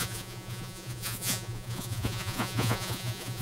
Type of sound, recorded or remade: remade